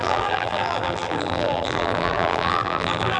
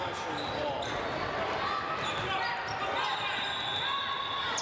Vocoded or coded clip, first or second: first